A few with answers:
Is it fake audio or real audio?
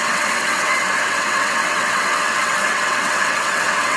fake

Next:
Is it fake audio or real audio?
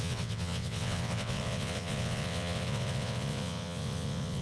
fake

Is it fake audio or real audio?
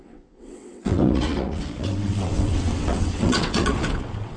fake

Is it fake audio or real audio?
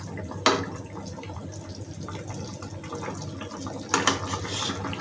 real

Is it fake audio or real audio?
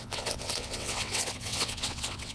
fake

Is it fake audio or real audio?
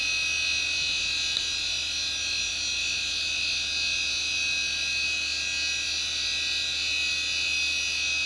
real